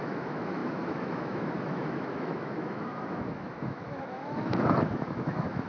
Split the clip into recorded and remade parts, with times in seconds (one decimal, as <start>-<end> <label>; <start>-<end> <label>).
0.0-5.7 remade